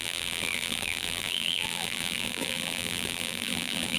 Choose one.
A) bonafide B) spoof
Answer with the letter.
B